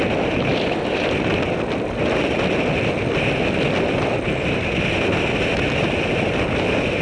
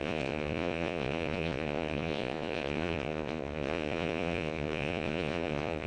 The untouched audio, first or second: first